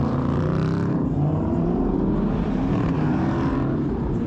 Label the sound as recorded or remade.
remade